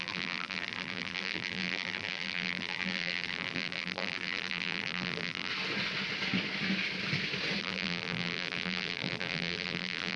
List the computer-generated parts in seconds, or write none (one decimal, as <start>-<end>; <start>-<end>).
0.0-5.5; 7.6-10.2